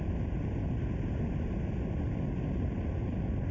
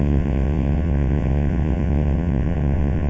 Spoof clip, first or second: second